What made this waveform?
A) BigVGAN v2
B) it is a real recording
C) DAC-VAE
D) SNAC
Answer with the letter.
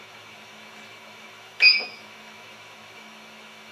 C